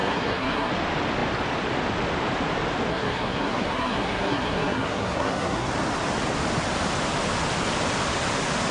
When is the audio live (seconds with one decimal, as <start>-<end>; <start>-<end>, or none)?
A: 0.7-2.9; 5.7-8.7